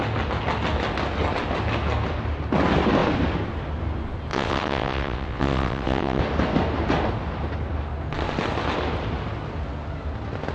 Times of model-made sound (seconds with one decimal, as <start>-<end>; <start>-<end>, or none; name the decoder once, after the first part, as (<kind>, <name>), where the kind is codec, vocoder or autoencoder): 4.3-6.2 (vocoder, WaveNeXt)